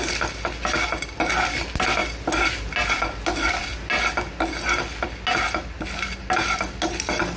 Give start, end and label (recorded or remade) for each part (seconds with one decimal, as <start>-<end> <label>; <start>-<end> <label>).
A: 0.0-7.4 recorded